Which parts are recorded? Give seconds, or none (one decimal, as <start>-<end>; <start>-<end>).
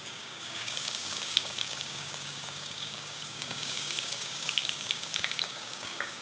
none